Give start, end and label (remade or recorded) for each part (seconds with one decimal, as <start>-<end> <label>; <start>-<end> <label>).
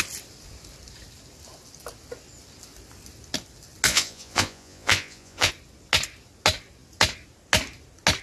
0.0-3.9 recorded; 3.9-5.5 remade; 5.5-8.2 recorded